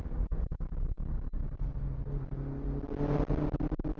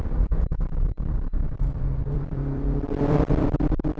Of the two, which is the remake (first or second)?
second